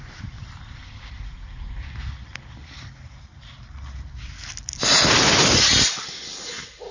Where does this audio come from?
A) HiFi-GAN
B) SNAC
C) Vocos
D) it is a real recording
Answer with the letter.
D